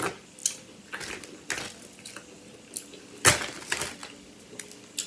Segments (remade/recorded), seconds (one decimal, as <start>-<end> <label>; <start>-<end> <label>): 0.0-5.1 recorded